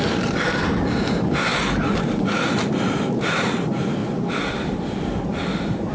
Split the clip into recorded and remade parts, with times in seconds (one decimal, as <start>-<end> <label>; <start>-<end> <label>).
0.0-5.9 recorded

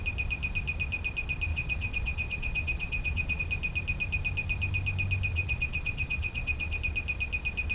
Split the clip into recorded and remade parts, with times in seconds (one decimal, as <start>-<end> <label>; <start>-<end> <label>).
0.0-1.5 recorded; 1.5-3.4 remade; 3.4-5.3 recorded; 5.3-6.8 remade; 6.8-7.7 recorded